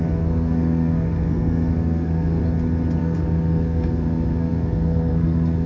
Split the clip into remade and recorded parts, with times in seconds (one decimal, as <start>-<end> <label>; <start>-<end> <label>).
0.0-2.4 remade; 2.4-3.0 recorded; 3.0-5.7 remade